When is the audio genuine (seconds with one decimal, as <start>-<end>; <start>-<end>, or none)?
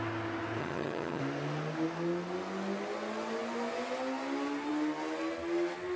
0.0-0.6; 1.2-6.0